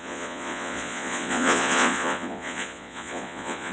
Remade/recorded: remade